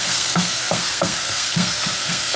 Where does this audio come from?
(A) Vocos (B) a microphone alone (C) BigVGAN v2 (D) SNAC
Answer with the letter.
D